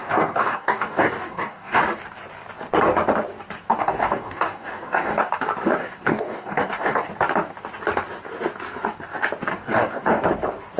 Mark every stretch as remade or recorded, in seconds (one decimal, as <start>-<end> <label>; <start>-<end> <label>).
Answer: 0.0-1.8 remade; 1.8-3.7 recorded; 3.7-5.3 remade; 5.3-5.8 recorded; 5.8-7.1 remade; 7.1-9.5 recorded; 9.5-10.2 remade; 10.2-10.8 recorded